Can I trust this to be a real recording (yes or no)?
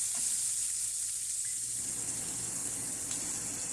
yes